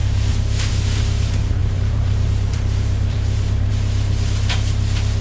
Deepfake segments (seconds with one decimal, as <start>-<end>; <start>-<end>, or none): 1.6-3.7